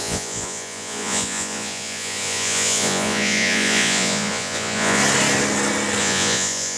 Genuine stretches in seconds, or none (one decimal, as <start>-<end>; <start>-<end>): 5.0-6.0